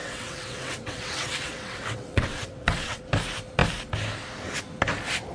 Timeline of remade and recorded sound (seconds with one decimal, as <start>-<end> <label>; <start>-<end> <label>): 0.0-3.0 remade; 3.0-5.3 recorded